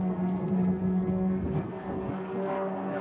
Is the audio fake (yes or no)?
yes